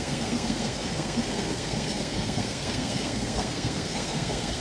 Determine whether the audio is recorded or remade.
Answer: remade